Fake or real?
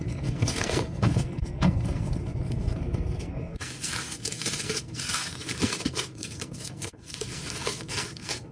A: fake